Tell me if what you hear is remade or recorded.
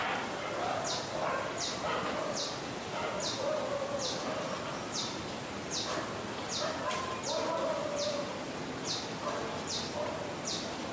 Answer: recorded